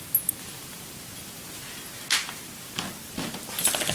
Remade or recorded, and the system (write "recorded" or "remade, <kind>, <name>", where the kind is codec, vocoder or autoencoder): recorded